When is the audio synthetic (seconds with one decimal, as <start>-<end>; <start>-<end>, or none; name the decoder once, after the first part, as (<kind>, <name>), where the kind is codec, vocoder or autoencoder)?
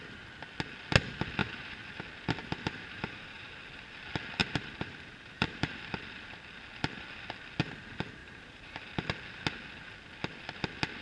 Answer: 1.4-2.0 (vocoder, BigVGAN v2); 2.4-3.5; 4.4-5.7; 8.2-8.9